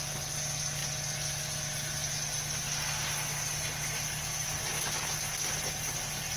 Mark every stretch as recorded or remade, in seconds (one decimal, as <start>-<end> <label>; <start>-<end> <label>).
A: 0.0-6.4 recorded